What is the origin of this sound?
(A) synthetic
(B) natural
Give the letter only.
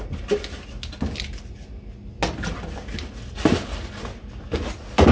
B